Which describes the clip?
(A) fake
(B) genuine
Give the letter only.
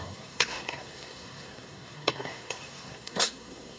A